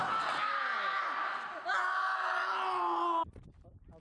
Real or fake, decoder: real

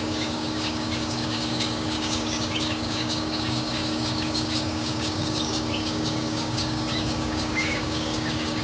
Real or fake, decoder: fake, codec, DAC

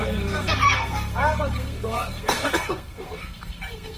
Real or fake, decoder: fake, codec, SNAC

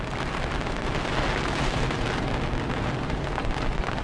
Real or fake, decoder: real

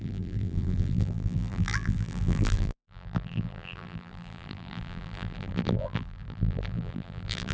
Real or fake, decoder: fake, vocoder, BigVGAN v2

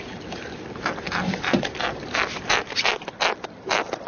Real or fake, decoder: real